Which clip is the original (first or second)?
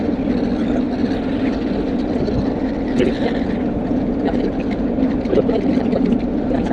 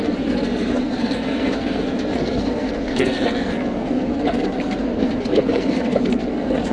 first